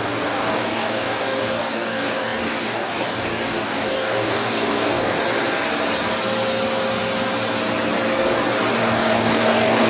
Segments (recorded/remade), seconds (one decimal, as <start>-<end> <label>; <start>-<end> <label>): 0.0-5.2 remade; 5.2-8.8 recorded; 8.8-9.9 remade